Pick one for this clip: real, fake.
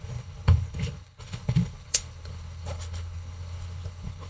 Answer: fake